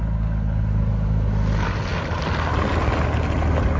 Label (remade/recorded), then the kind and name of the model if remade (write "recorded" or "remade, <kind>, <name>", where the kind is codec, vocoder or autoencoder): recorded